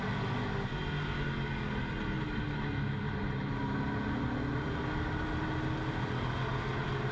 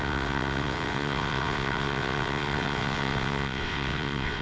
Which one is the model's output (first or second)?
second